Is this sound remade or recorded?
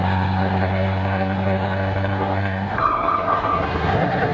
remade